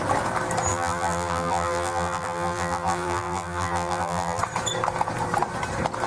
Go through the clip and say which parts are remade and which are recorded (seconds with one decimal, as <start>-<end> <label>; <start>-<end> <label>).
0.0-0.7 recorded; 0.7-4.4 remade; 4.4-6.1 recorded